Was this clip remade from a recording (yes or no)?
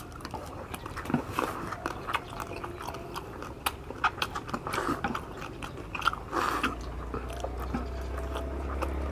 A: no